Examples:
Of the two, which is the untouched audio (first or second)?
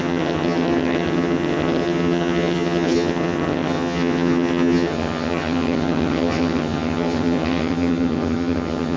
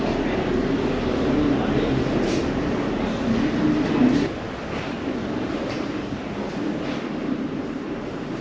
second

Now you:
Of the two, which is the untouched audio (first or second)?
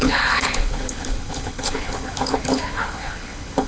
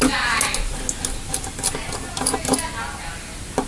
second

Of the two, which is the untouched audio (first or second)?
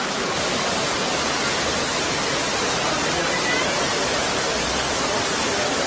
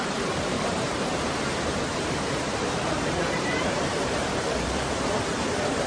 first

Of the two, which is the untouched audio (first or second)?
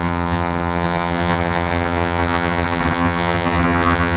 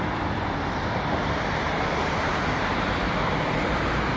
second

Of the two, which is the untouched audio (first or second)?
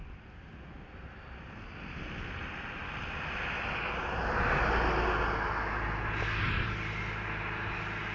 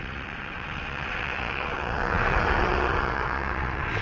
first